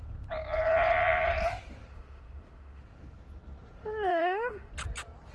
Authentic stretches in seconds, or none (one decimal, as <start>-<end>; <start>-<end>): 0.0-1.9; 2.8-4.1; 4.7-5.3